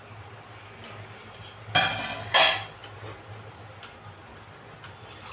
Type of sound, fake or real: real